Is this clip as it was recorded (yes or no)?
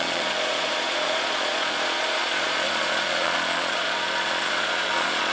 no